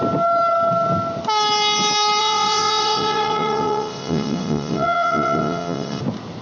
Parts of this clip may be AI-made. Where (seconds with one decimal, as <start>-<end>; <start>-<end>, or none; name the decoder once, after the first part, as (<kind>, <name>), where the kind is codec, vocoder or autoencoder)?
2.2-6.0 (vocoder, WaveNeXt)